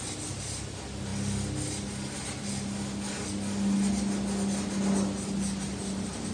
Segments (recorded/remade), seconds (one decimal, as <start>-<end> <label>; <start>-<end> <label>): 0.0-6.3 recorded